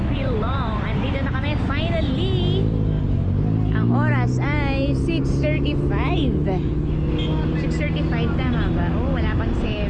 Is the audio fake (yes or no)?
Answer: no